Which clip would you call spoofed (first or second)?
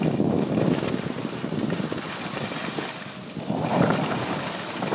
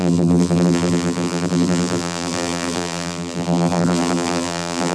second